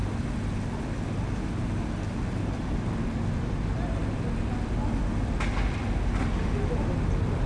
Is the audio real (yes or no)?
yes